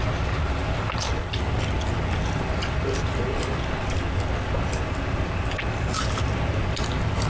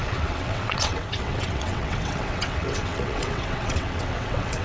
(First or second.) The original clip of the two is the first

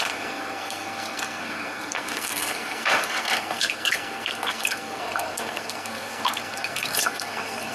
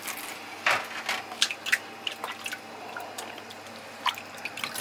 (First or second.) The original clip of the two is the second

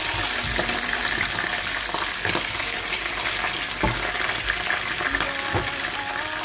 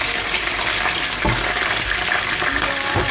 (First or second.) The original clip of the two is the first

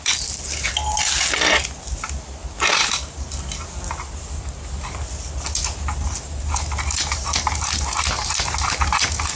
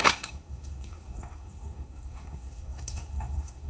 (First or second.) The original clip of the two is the first